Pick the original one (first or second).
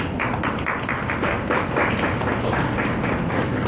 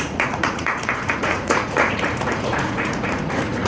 first